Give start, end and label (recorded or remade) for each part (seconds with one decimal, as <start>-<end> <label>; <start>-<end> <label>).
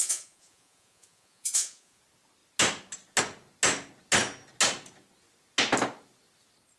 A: 0.0-2.0 remade; 2.0-6.8 recorded